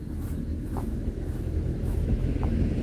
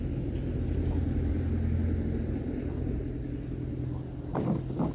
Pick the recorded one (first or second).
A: second